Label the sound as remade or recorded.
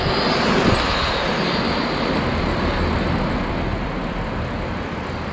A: recorded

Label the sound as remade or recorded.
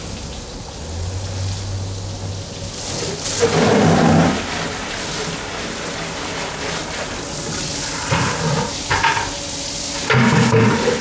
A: recorded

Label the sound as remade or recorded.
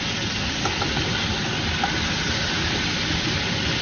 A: recorded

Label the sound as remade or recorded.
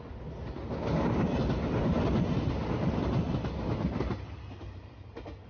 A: recorded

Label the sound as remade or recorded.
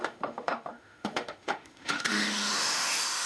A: remade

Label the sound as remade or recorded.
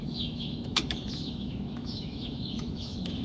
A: remade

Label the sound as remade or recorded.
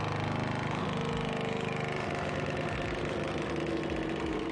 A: recorded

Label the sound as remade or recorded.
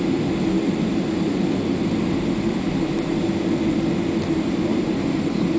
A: recorded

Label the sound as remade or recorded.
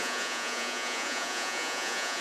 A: remade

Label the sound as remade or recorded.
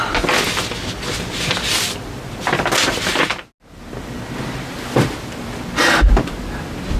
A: recorded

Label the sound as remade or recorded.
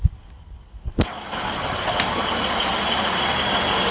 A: recorded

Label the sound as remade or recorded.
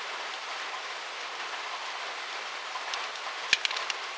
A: recorded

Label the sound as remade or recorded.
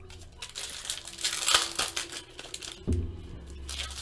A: recorded